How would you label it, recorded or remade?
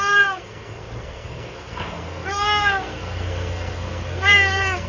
remade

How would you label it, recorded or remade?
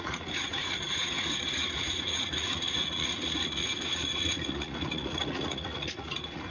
remade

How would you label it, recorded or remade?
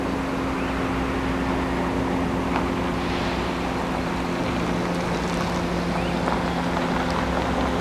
recorded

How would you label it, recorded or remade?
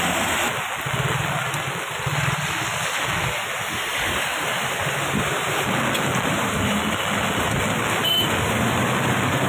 recorded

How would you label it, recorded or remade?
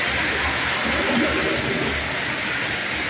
recorded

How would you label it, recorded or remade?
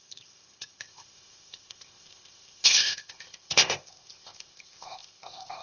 remade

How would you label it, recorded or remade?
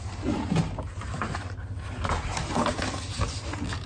recorded